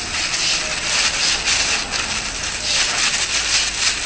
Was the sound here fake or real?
real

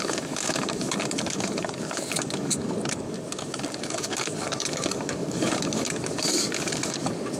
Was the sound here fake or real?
fake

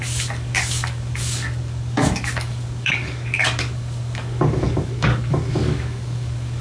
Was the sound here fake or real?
fake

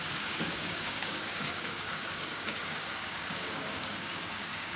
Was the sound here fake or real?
fake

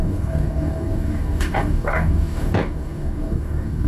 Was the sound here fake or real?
fake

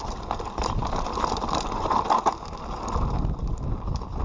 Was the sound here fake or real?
real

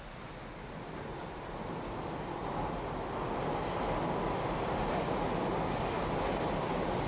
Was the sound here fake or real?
real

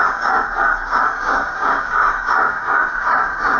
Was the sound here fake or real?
fake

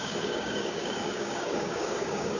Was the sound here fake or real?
fake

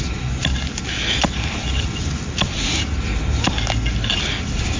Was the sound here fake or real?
real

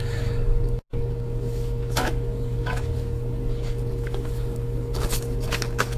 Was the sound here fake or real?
fake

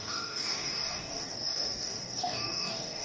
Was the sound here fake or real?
fake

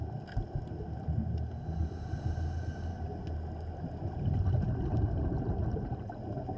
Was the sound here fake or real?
real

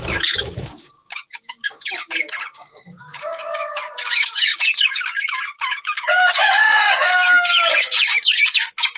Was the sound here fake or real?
fake